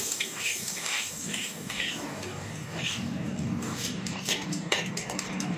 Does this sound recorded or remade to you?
remade